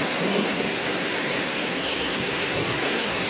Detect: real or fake fake